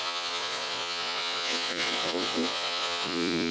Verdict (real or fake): fake